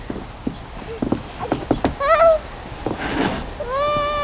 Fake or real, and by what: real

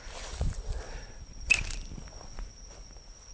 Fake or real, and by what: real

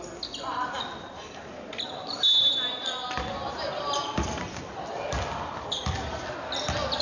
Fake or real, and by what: real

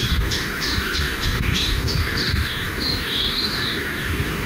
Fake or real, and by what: fake, codec, DAC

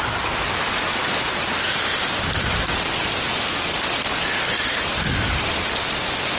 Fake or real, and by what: real